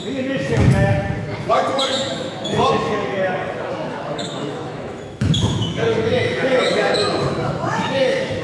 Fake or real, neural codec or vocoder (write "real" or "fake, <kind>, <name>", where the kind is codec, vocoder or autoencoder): fake, autoencoder, DAC-VAE